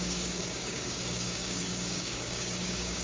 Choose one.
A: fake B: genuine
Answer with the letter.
A